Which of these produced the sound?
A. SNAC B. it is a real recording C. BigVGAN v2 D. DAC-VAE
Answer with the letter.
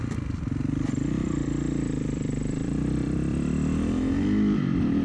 C